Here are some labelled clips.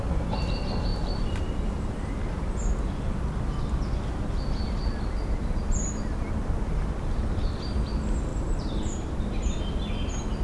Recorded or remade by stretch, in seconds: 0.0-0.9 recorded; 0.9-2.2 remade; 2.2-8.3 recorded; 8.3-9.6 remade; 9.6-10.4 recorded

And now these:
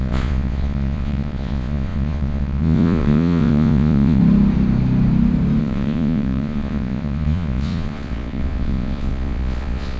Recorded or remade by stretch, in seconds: 0.0-4.2 remade; 4.2-5.6 recorded; 5.6-10.0 remade

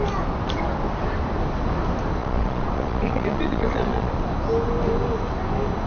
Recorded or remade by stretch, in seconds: 0.0-2.2 recorded; 2.2-4.1 remade; 4.1-5.9 recorded

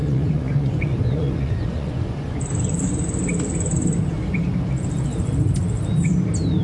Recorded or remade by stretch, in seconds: 0.0-2.4 remade; 2.4-6.6 recorded

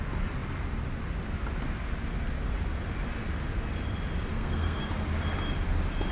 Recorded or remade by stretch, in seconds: 0.0-4.3 recorded; 4.3-4.8 remade; 4.8-6.1 recorded